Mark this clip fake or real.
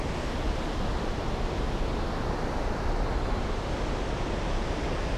real